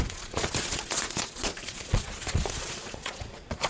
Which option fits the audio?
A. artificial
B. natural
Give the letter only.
A